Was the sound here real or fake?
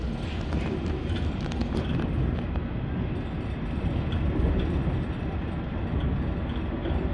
real